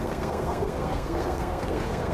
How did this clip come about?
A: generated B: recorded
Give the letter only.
A